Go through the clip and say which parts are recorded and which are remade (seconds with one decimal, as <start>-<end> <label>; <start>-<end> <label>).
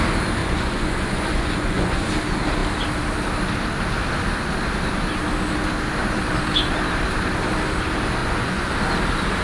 0.0-0.4 recorded; 0.4-2.1 remade; 2.1-8.2 recorded; 8.2-8.7 remade; 8.7-9.4 recorded